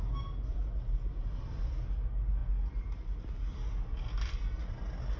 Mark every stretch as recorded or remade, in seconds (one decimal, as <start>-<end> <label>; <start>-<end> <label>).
0.0-5.2 recorded